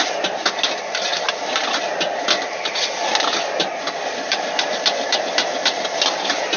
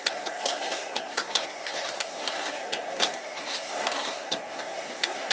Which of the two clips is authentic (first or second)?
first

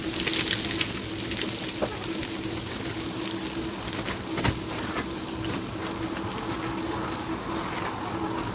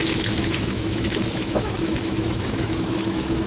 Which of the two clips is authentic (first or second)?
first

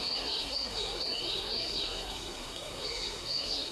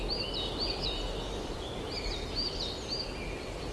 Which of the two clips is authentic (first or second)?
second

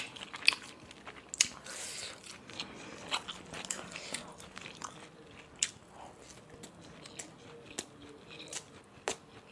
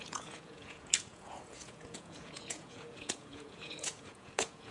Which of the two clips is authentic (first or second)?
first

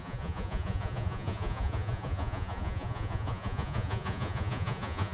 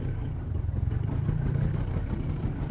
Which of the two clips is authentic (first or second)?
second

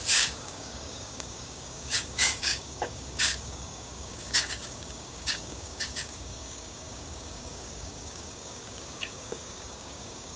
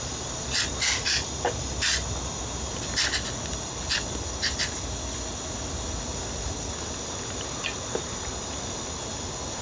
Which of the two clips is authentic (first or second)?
second